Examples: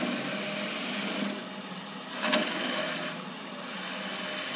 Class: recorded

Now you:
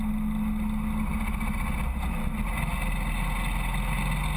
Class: recorded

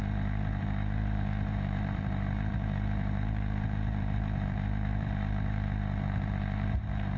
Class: remade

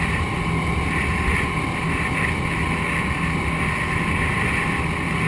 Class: recorded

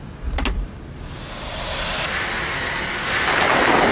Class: recorded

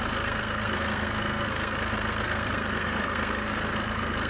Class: remade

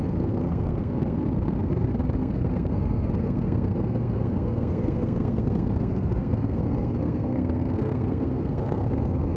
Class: remade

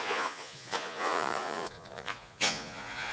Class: remade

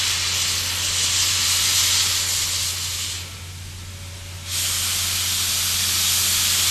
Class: recorded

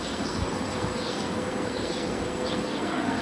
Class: remade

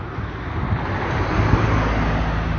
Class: recorded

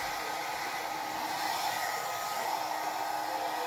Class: recorded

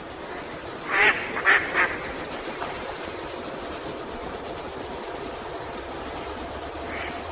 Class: remade